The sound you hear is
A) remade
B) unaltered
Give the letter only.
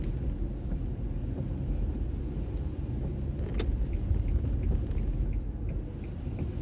B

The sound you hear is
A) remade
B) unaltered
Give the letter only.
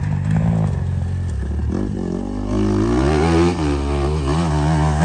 B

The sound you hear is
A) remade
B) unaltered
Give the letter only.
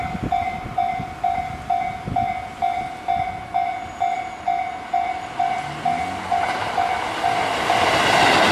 B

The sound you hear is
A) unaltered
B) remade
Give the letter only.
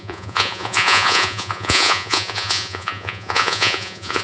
B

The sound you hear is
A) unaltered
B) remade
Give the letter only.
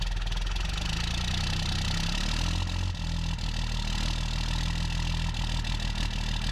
A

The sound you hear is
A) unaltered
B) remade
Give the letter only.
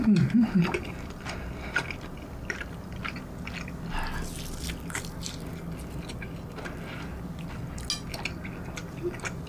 A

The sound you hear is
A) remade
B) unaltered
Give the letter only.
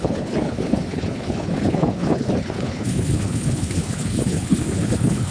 A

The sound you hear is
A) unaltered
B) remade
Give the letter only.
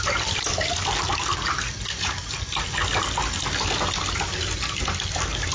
A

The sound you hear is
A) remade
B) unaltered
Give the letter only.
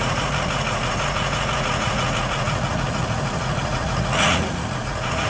A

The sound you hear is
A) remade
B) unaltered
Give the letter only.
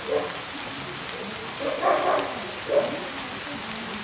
B